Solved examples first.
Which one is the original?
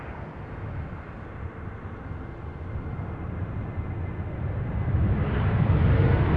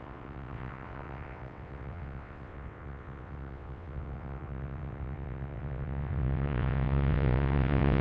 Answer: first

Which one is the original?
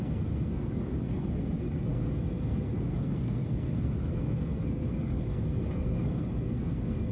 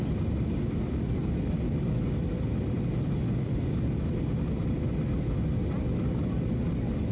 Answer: second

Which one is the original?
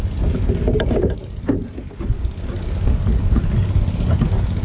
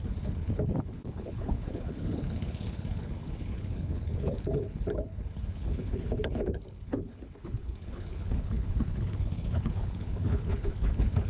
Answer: first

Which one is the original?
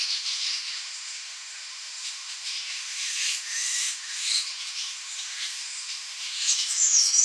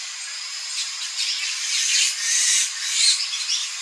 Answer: second